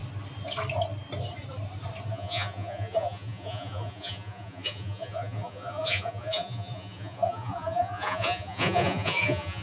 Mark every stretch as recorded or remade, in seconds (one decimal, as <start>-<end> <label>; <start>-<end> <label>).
0.0-2.1 recorded; 2.1-9.6 remade